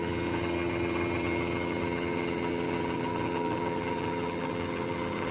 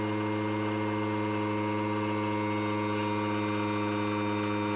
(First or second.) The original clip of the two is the second